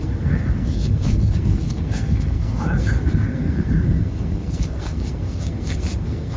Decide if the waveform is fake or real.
fake